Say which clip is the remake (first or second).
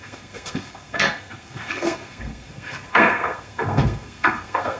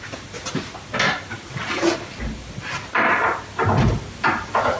first